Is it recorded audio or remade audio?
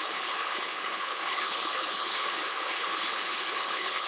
remade